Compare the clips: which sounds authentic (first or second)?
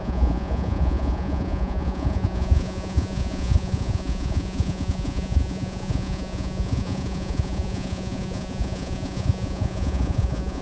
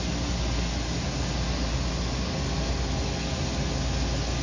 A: second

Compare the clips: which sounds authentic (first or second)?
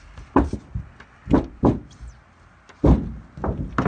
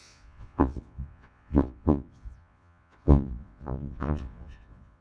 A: first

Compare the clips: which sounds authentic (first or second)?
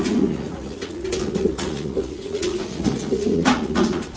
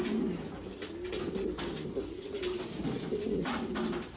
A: second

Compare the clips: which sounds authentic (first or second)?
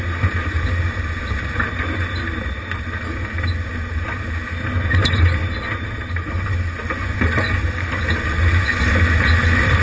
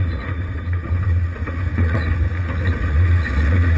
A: first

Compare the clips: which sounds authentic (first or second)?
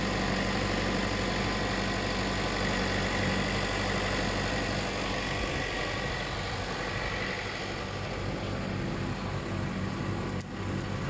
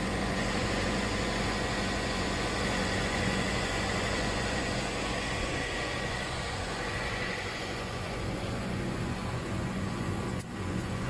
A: first